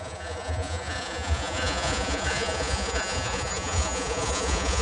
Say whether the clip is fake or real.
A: fake